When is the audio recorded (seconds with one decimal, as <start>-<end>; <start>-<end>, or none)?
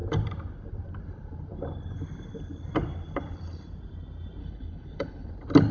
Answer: 0.0-4.4; 5.3-5.7